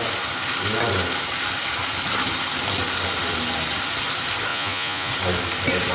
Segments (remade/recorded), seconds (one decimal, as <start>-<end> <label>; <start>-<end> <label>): 0.0-4.5 recorded; 4.5-5.1 remade; 5.1-5.9 recorded

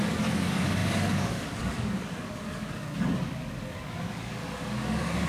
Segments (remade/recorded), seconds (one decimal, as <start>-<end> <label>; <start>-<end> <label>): 0.0-5.3 remade

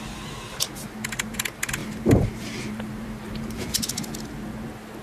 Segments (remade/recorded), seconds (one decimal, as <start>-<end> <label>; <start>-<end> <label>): 0.0-1.8 recorded; 1.8-3.9 remade; 3.9-5.0 recorded

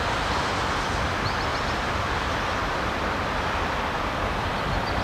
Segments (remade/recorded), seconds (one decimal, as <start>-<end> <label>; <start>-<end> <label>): 0.0-1.5 recorded; 1.5-4.5 remade; 4.5-5.0 recorded

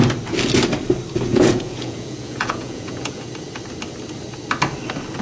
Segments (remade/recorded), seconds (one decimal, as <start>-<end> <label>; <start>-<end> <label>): 0.0-1.3 recorded; 1.3-3.2 remade; 3.2-5.2 recorded

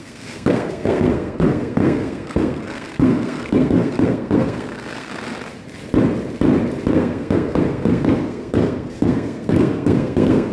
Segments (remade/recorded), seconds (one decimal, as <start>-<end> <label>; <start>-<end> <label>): 0.0-5.1 remade; 5.1-6.9 recorded; 6.9-10.5 remade

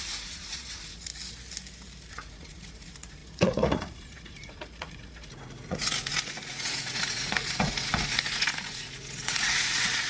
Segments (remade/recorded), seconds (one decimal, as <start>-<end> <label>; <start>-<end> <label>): 0.0-1.1 remade; 1.1-2.1 recorded; 2.1-10.1 remade

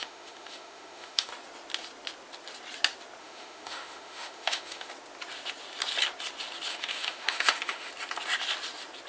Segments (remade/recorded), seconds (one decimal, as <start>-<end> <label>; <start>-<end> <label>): 0.0-1.3 remade; 1.3-3.2 recorded; 3.2-4.9 remade; 4.9-6.7 recorded; 6.7-7.9 remade; 7.9-9.1 recorded